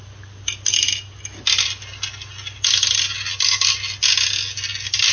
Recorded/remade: recorded